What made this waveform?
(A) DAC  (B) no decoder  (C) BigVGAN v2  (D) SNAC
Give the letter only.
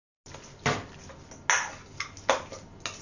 B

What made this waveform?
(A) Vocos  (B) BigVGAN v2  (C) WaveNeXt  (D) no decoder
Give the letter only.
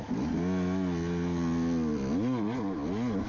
D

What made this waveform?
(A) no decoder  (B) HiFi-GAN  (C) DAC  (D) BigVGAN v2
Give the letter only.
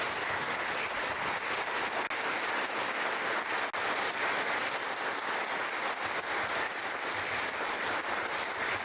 A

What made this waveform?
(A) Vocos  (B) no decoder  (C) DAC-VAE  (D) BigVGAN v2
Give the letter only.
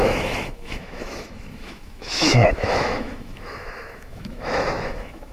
C